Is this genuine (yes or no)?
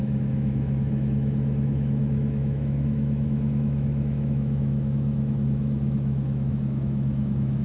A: no